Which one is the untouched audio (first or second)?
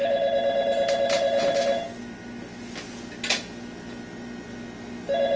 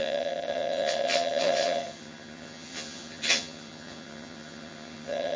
first